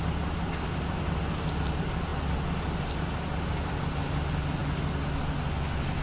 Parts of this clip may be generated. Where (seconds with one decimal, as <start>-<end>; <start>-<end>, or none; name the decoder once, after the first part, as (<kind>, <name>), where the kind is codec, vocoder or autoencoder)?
none